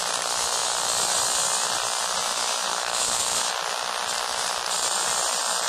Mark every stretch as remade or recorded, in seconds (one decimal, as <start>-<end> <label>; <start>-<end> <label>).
0.0-2.7 recorded; 2.7-3.5 remade; 3.5-5.7 recorded